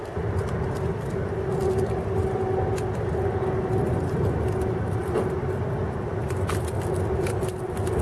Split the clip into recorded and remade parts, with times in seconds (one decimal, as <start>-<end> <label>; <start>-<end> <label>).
0.0-8.0 recorded